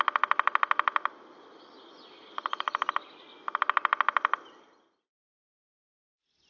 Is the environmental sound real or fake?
real